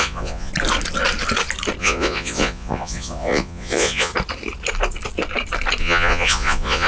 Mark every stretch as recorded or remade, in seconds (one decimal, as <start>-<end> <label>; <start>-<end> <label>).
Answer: 0.0-0.5 remade; 0.5-1.8 recorded; 1.8-4.1 remade; 4.1-5.8 recorded; 5.8-6.9 remade